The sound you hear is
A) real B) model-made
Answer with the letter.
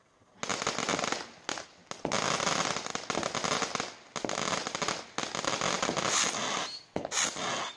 A